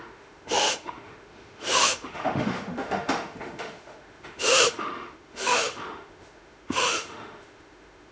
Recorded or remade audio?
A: remade